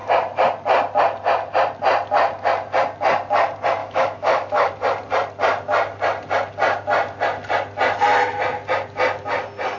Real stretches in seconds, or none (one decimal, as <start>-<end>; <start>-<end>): 0.0-3.8; 4.7-9.8